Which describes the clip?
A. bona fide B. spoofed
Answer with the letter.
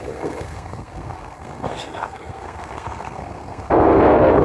B